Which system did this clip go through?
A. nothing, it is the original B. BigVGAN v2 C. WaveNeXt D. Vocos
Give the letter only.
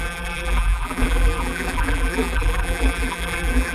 B